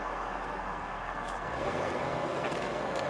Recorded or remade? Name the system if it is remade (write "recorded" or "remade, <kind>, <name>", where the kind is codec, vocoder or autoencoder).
remade, codec, SNAC